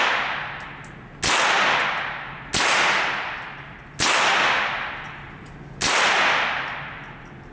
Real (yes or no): yes